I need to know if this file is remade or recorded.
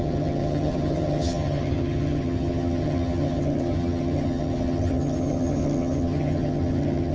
remade